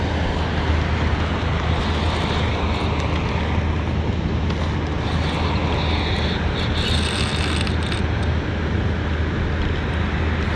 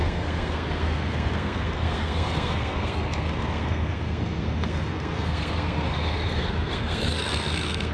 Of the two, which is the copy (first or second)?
second